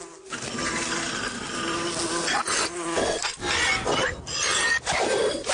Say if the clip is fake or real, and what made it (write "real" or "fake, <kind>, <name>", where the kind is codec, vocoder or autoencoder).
real